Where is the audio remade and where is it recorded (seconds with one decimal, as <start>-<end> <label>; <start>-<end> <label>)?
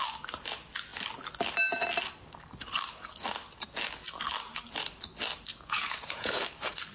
0.0-5.5 recorded; 5.5-6.4 remade; 6.4-6.9 recorded